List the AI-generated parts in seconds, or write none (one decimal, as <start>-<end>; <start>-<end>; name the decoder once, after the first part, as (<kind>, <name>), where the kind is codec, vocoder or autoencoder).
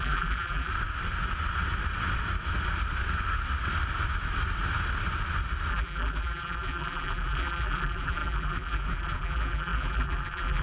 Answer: 0.0-0.7 (vocoder, BigVGAN v2); 5.7-10.6